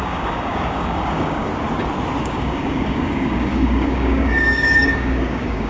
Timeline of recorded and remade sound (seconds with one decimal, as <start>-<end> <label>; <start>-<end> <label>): 0.0-1.5 remade; 1.5-2.2 recorded; 2.2-5.7 remade